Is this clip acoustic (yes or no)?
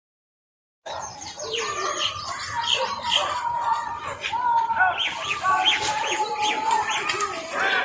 yes